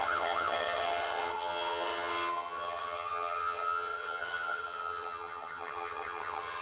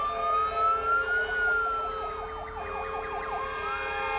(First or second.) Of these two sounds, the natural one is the second